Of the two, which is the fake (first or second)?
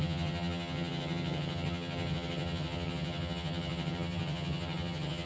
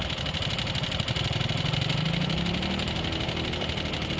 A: first